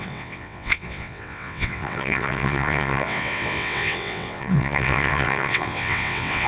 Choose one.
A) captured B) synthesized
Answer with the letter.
B